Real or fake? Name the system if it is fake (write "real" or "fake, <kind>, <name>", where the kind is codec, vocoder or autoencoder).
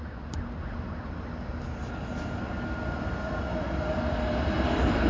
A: real